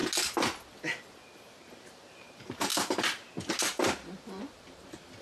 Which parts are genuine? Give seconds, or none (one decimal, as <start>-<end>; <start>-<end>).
0.0-1.7; 2.7-3.6